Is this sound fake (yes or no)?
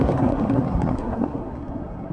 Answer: yes